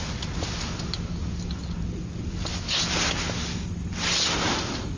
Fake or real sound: real